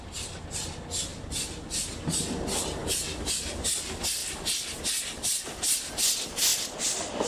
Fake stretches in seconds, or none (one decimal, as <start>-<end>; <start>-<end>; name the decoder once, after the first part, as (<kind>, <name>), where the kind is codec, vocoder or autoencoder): none